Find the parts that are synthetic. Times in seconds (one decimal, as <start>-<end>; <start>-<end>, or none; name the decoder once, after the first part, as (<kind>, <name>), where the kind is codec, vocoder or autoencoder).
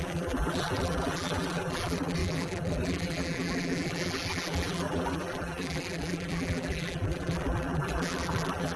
0.0-8.8 (vocoder, BigVGAN v2)